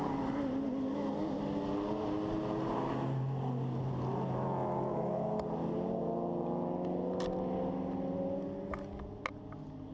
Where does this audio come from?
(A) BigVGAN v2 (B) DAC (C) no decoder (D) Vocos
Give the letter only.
C